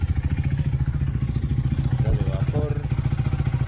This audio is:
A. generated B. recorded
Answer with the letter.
B